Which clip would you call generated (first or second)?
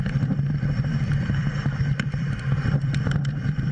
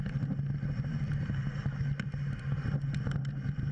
first